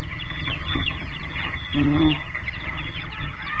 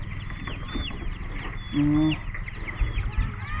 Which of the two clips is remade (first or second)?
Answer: first